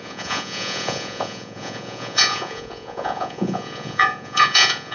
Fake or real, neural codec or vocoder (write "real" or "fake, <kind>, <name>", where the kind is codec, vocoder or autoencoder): fake, vocoder, Vocos